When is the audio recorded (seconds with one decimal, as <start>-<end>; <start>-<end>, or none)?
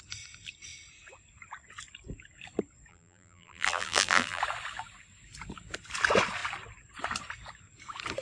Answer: 0.0-2.9; 4.4-8.2